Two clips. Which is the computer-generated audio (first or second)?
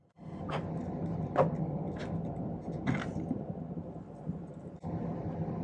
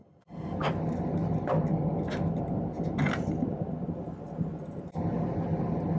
first